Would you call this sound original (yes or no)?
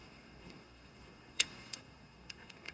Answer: no